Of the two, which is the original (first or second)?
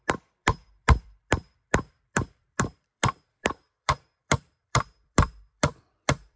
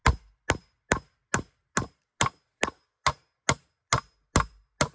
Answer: second